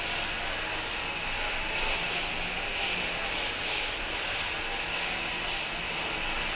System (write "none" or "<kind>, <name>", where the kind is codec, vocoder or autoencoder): none